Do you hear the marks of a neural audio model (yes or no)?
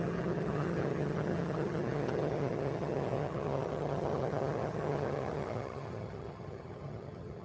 yes